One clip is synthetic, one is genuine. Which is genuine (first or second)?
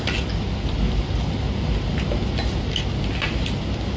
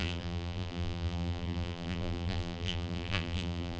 first